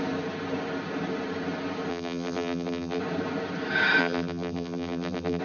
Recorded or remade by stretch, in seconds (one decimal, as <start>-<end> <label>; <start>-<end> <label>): 0.0-1.9 recorded; 1.9-3.0 remade; 3.0-4.0 recorded; 4.0-5.4 remade